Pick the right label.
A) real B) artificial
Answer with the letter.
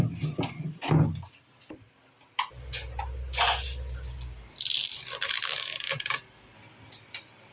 A